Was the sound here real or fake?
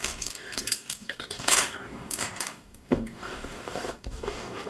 fake